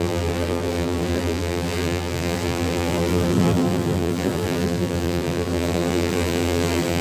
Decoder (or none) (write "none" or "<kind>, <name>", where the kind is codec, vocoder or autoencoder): vocoder, BigVGAN v2